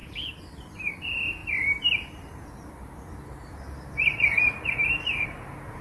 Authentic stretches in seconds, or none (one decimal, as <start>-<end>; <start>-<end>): 0.0-5.8